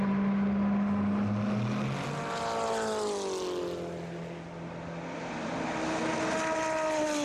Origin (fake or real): real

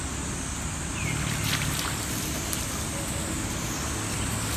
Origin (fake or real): real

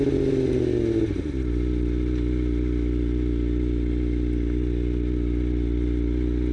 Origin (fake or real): real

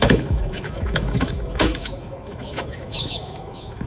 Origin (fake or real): fake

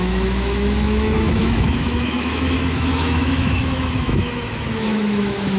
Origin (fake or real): fake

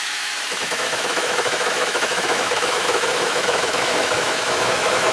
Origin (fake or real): fake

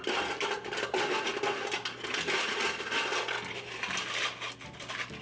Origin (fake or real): real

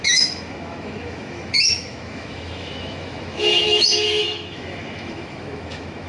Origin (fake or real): fake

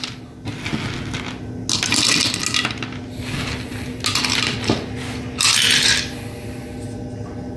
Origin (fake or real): real